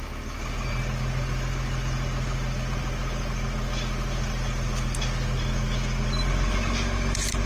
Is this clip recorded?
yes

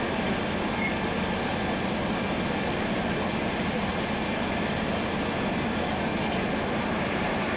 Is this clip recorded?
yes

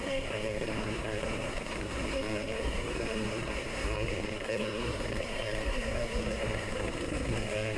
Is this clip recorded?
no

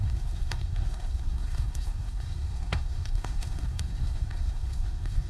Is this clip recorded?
no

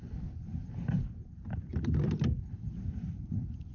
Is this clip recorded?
yes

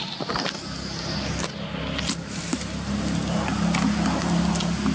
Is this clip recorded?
yes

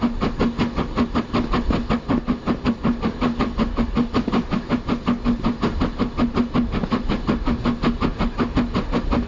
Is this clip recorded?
yes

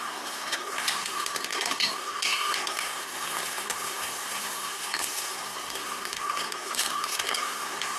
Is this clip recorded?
no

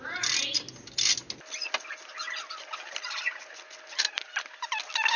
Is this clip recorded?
yes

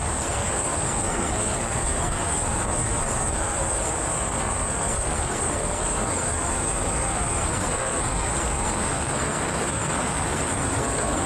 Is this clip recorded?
no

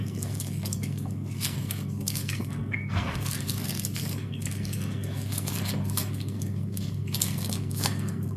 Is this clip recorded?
no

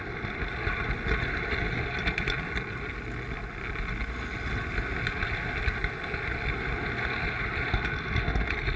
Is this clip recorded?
yes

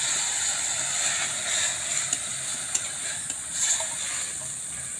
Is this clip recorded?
yes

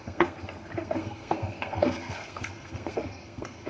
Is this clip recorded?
no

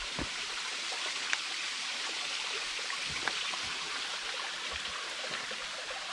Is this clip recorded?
yes